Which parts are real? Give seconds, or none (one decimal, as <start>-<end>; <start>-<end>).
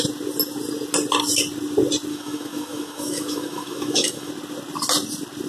0.0-2.1; 4.3-5.5